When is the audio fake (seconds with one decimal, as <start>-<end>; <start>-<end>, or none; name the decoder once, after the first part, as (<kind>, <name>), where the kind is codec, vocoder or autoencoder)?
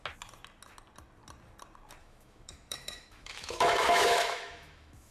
2.0-5.1 (autoencoder, DAC-VAE)